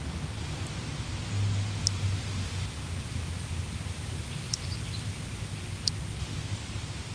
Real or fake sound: real